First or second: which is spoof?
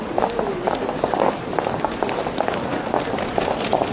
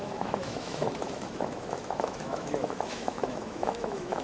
second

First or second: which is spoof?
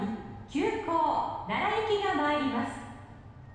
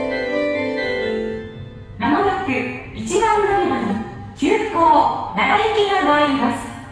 second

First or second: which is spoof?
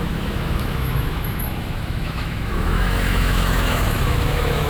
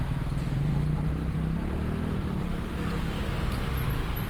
first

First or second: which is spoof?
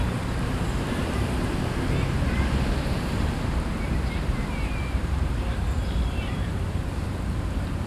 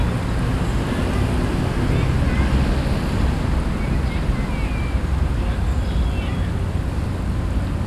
first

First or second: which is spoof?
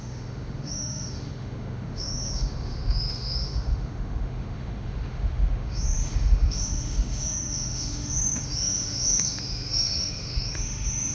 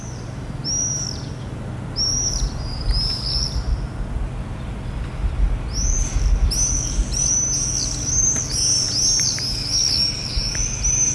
first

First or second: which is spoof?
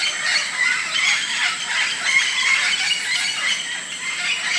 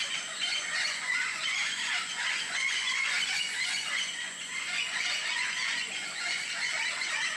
second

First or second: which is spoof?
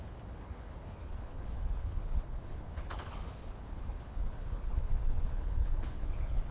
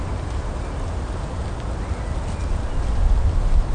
first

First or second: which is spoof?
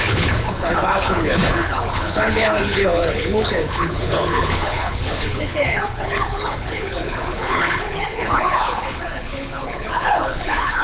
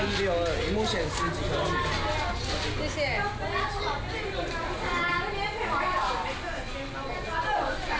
first